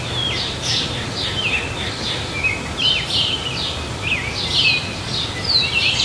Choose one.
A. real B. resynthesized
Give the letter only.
A